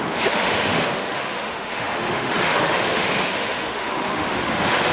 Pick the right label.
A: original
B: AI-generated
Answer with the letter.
B